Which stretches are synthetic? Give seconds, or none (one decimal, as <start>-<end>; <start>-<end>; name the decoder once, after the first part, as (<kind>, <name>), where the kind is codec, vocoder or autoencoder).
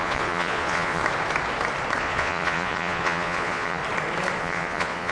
0.0-1.0 (vocoder, Vocos); 2.0-3.8; 4.4-5.1